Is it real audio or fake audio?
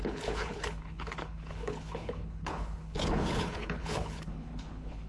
fake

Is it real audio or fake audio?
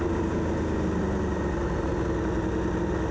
real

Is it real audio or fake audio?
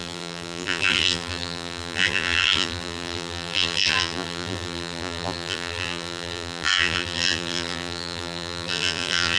fake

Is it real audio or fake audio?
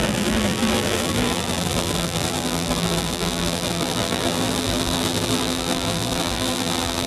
fake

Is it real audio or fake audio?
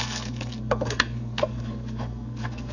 fake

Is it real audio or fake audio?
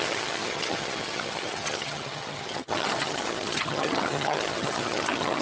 fake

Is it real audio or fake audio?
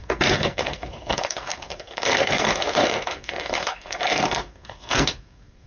fake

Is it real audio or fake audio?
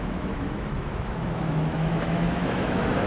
fake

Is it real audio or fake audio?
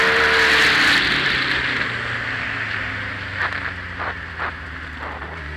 real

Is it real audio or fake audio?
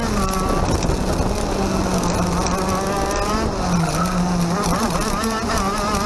real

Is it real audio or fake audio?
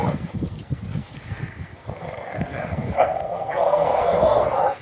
fake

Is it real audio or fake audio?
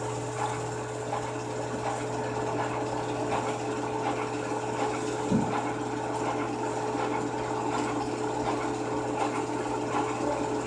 real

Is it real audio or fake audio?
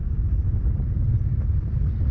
real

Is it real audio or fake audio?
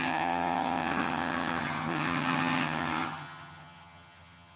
fake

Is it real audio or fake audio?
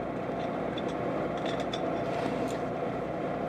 real